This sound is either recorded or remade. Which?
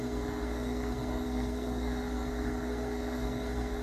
remade